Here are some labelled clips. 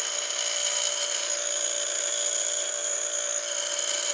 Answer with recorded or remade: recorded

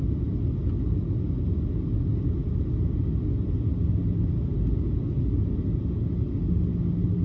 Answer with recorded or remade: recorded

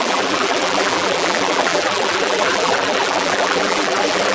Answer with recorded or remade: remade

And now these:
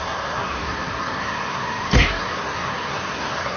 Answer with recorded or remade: remade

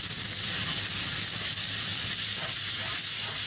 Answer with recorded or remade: recorded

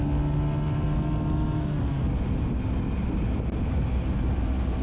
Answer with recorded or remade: recorded